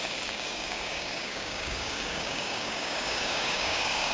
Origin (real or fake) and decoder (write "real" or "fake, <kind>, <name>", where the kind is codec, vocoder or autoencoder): fake, codec, DAC